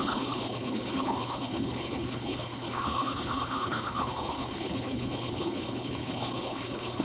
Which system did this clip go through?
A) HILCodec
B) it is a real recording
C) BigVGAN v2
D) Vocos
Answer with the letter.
A